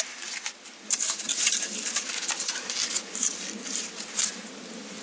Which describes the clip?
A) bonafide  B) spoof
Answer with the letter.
A